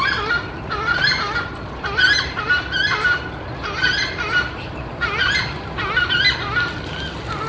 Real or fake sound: real